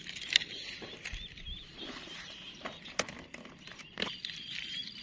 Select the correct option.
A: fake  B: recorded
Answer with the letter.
A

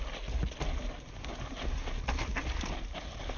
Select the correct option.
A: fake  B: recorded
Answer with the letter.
B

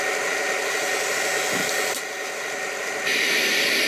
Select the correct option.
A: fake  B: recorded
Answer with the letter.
B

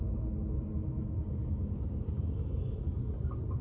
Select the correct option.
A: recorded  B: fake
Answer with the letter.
A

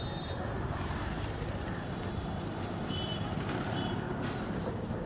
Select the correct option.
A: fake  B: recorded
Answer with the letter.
A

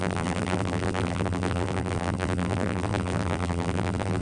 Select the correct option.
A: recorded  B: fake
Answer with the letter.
B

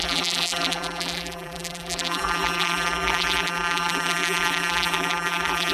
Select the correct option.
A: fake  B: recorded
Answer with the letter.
A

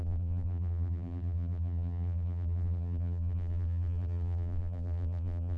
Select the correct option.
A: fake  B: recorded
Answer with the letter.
A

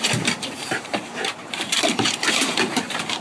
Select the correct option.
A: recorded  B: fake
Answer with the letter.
B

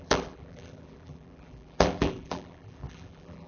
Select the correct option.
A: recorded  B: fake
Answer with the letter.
B